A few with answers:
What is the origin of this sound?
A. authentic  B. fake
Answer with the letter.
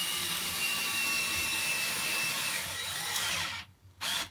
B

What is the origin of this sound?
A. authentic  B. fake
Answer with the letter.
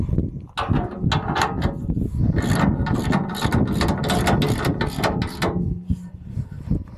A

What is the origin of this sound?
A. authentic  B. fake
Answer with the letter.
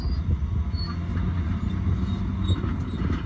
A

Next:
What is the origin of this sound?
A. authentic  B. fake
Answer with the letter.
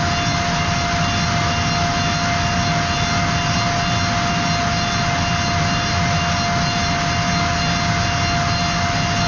A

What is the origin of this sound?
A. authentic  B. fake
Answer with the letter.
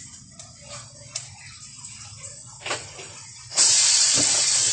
B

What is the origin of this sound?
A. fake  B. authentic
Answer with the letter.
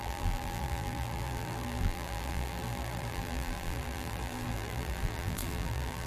A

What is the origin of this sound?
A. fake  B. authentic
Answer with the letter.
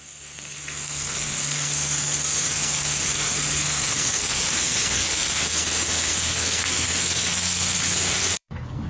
A